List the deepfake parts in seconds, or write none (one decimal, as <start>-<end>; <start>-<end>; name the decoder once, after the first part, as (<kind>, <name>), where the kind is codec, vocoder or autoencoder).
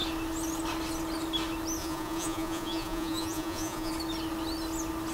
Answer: 1.8-3.9 (vocoder, Vocos)